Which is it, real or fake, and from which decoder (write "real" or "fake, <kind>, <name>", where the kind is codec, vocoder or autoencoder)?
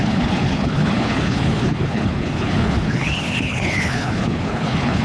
fake, codec, HILCodec